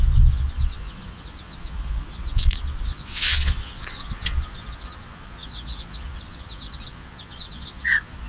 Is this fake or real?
fake